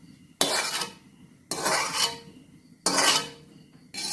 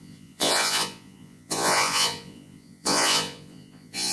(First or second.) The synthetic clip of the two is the second